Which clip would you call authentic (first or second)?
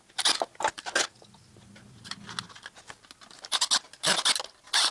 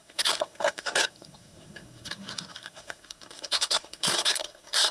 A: first